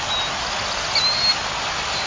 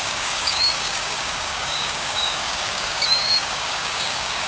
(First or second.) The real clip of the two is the first